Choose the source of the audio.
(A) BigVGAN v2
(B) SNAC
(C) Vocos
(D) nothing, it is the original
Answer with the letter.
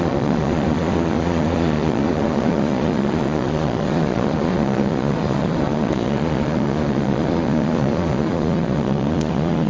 C